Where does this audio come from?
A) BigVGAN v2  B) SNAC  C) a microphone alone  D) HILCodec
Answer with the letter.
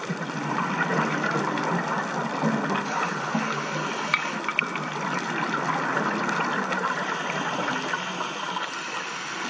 C